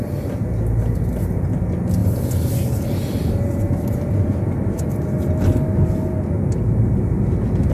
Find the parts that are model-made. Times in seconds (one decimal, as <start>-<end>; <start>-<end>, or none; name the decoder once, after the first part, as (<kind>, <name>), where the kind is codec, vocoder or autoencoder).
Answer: none